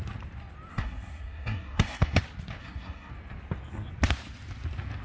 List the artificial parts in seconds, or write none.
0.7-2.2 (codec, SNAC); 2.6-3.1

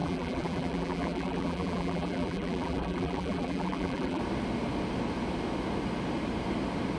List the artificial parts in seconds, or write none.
0.0-4.2 (vocoder, BigVGAN v2)

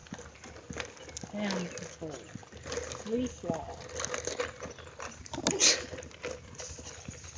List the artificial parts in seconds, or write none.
none

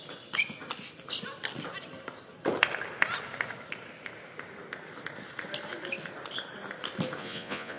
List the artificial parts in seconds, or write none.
7.2-7.8 (vocoder, Vocos)

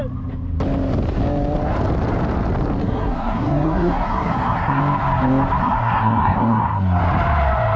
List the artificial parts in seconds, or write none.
2.8-4.8 (codec, SNAC); 5.6-7.0

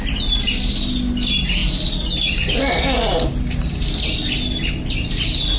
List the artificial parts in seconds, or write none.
none